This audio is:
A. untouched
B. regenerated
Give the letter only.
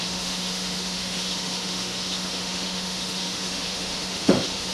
B